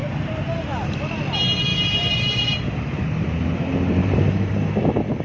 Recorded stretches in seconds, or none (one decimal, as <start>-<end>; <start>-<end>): 1.2-1.7; 2.8-4.0; 4.5-5.2